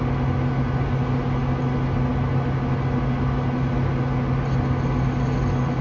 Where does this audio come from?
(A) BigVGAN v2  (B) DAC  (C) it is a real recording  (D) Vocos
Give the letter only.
C